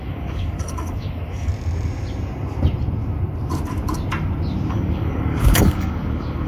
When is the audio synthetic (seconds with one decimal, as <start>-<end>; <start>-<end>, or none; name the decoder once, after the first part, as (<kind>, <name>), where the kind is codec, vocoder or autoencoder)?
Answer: 0.0-1.5 (codec, DAC); 4.7-6.5